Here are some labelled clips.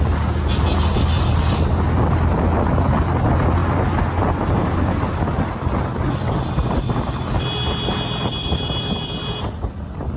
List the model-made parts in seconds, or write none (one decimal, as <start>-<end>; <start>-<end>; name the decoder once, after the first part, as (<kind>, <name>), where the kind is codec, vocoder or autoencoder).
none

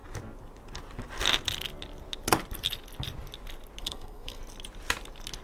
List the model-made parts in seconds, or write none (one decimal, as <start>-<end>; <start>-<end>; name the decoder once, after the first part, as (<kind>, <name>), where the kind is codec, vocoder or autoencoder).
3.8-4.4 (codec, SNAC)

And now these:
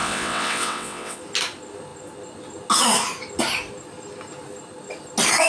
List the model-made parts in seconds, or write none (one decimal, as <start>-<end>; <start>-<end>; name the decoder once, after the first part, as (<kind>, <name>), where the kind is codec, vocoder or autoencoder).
0.0-1.2 (vocoder, WaveNeXt)

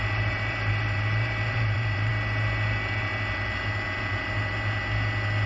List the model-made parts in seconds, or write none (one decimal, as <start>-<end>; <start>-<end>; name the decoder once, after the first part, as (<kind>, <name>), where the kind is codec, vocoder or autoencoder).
0.0-2.1 (vocoder, BigVGAN v2)

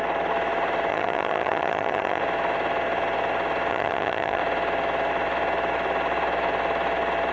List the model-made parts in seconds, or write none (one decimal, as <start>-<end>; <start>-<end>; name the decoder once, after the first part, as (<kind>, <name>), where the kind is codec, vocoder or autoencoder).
0.9-2.2 (vocoder, HiFi-GAN); 3.7-4.4